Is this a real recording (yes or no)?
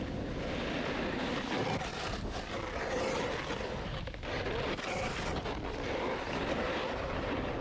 yes